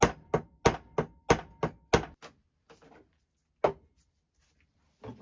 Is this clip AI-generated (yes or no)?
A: no